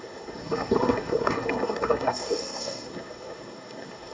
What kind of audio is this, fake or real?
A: fake